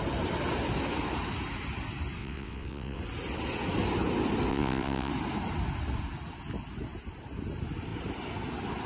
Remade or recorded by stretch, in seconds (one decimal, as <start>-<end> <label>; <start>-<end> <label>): 0.0-2.2 recorded; 2.2-3.0 remade; 3.0-4.5 recorded; 4.5-5.1 remade; 5.1-8.9 recorded